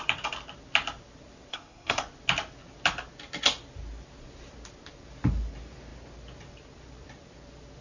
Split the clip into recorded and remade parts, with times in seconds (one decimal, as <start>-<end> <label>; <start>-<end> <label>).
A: 0.0-1.5 recorded; 1.5-2.0 remade; 2.0-7.8 recorded